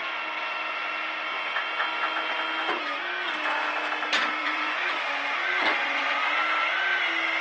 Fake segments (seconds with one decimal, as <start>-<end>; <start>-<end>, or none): 4.4-4.9; 5.4-6.2